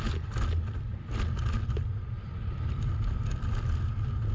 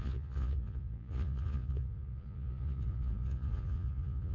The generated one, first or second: second